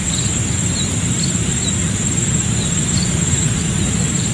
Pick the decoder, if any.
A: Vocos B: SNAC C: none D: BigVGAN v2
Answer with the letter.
D